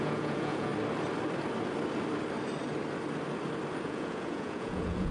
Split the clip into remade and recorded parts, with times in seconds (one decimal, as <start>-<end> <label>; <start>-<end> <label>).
0.0-0.7 remade; 0.7-3.8 recorded; 3.8-5.1 remade